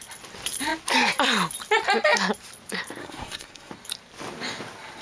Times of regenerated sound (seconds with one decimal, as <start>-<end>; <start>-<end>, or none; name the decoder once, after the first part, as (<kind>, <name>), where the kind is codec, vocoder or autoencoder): 3.0-3.7 (codec, SNAC)